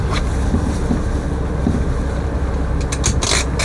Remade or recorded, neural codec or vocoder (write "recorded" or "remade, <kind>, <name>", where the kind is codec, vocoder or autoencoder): recorded